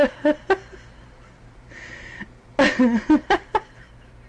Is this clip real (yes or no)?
yes